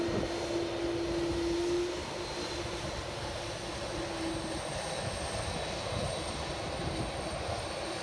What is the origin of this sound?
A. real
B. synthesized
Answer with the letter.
A